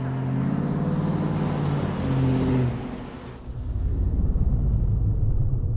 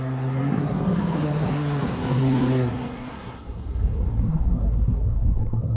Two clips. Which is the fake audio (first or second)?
second